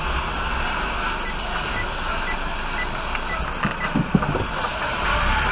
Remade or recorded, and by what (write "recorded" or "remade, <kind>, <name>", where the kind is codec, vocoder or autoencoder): recorded